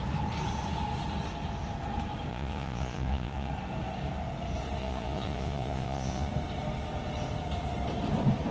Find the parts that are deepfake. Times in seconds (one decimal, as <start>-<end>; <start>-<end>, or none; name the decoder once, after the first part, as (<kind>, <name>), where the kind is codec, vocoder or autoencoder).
2.3-3.5 (vocoder, Vocos); 4.8-6.3